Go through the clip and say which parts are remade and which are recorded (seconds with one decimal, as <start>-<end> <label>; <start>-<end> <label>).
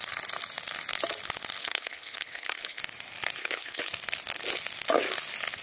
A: 0.0-1.6 recorded; 1.6-2.8 remade; 2.8-3.4 recorded; 3.4-3.9 remade; 3.9-5.6 recorded